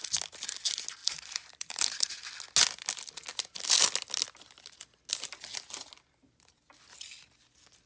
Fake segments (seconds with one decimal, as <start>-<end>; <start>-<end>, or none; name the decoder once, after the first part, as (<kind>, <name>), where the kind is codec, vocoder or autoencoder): 1.0-2.1 (vocoder, BigVGAN v2)